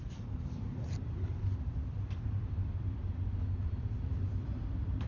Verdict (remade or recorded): remade